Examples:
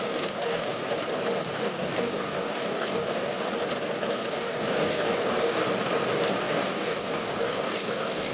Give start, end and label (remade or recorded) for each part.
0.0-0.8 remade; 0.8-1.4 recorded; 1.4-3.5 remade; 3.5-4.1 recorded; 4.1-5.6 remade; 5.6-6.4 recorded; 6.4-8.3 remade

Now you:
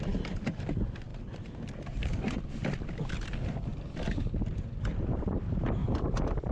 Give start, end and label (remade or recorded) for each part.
0.0-5.8 recorded; 5.8-6.5 remade

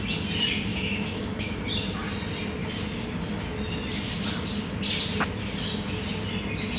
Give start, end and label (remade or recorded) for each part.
0.0-0.7 recorded; 0.7-1.6 remade; 1.6-6.8 recorded

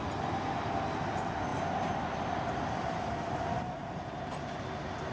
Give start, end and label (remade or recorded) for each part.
0.0-5.1 recorded

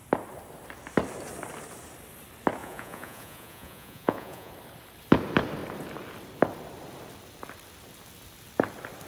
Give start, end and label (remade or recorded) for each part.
0.0-2.6 recorded; 2.6-4.5 remade; 4.5-9.1 recorded